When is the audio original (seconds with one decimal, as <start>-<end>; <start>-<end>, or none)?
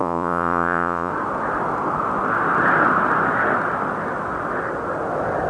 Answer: 1.1-5.5